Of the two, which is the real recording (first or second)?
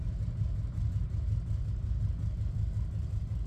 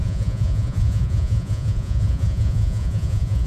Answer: first